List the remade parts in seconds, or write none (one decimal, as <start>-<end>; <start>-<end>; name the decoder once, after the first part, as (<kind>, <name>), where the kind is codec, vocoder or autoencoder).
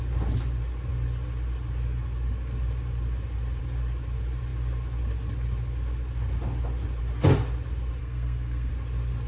8.0-8.7 (codec, SNAC)